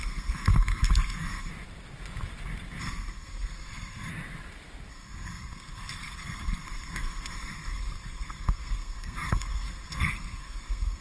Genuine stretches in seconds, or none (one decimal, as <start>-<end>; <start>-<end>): 1.5-2.8; 4.1-4.9